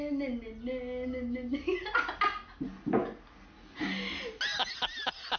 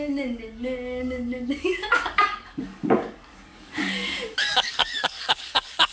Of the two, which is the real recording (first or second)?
first